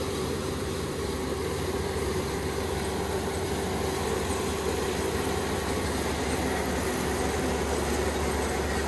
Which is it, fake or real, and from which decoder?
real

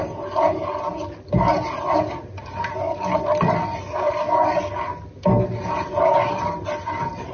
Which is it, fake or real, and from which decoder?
real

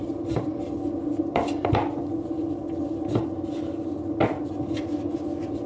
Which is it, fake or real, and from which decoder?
real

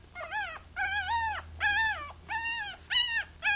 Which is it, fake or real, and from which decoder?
real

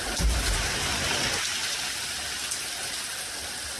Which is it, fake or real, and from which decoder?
real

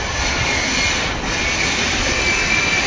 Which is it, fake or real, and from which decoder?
real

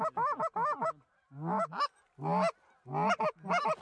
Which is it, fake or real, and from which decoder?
real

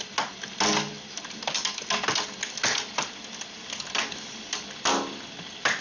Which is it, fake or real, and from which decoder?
real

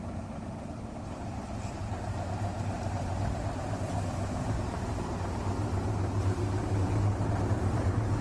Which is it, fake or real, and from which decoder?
fake, vocoder, BigVGAN v2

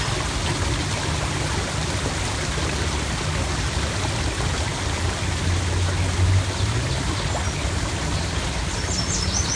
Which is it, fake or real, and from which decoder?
real